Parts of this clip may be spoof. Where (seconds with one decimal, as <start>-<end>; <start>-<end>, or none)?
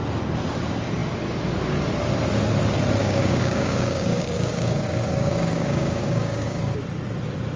3.0-6.6